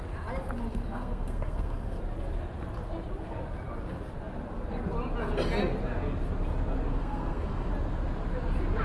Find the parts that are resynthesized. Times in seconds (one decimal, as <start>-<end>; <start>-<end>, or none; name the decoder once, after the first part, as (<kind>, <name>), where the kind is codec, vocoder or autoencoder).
0.7-2.0 (codec, SNAC); 6.9-7.7